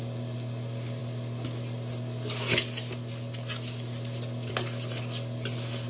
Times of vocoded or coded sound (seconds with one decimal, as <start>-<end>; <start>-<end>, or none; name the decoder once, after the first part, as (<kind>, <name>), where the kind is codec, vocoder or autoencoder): none